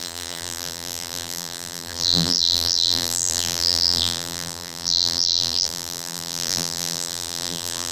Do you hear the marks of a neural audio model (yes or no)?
yes